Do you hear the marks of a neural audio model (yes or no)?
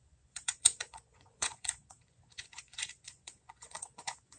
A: yes